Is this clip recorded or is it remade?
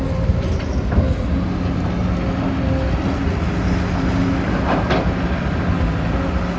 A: recorded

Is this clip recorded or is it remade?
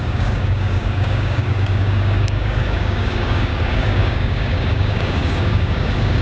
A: remade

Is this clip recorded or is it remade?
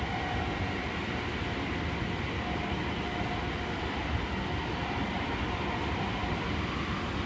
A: recorded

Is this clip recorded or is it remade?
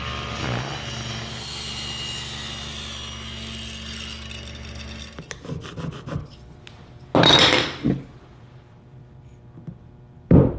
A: recorded